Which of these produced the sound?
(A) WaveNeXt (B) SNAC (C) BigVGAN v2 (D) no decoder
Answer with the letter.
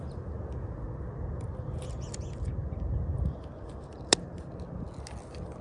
D